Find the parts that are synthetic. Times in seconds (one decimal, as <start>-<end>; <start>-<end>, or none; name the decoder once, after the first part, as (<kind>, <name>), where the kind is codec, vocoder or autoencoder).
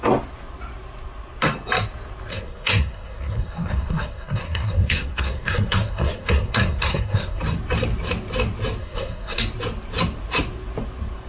2.3-7.4 (codec, SNAC); 8.8-9.4